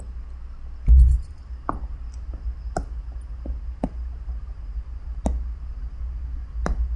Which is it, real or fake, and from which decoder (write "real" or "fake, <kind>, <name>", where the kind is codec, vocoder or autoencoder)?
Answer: real